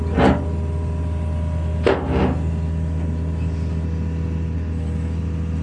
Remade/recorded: recorded